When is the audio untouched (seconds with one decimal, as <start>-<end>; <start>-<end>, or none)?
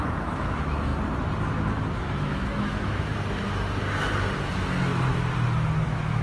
0.9-2.1; 3.1-5.8